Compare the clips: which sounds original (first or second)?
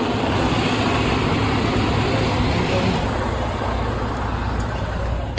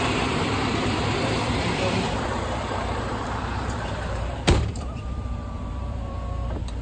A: first